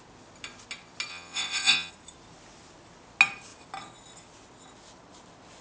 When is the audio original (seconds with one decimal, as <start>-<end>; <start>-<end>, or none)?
0.0-1.1; 1.9-5.6